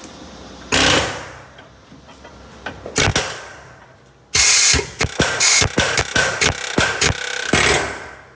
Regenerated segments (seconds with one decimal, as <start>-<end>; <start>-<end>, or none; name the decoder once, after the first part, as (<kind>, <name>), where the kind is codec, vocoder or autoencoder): none